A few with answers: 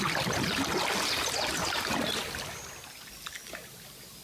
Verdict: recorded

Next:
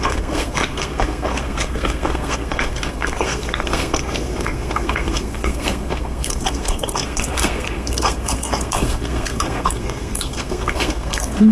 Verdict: remade